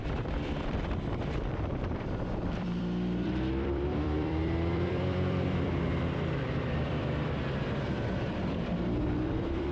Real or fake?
fake